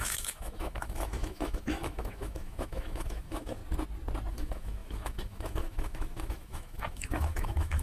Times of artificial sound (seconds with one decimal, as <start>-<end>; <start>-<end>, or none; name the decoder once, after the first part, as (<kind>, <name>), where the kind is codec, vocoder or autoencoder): 0.0-3.6 (autoencoder, DAC-VAE); 4.3-7.8